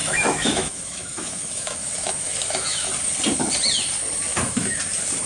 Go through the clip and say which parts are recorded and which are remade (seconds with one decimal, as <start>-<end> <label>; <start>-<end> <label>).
0.0-2.9 remade; 2.9-4.3 recorded; 4.3-4.8 remade; 4.8-5.3 recorded